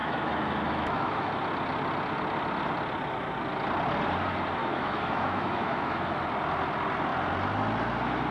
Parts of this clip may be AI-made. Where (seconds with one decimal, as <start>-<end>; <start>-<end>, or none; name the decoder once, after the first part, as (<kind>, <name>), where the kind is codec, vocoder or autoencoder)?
0.0-1.3 (autoencoder, DAC-VAE); 4.6-6.2